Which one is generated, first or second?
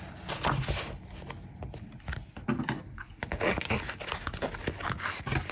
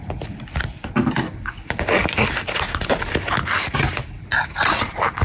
second